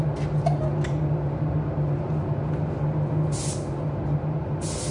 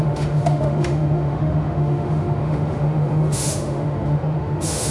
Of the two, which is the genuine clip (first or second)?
first